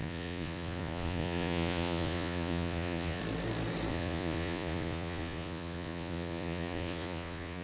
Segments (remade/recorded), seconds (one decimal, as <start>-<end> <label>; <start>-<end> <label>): 0.0-3.2 remade; 3.2-3.9 recorded; 3.9-7.6 remade